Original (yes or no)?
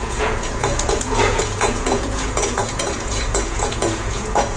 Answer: no